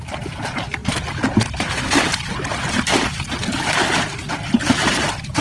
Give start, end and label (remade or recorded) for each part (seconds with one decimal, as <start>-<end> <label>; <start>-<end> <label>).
0.0-5.4 recorded